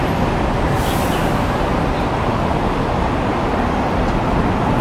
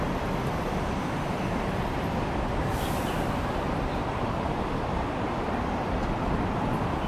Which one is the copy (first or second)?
second